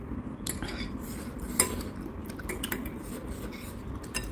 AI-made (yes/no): yes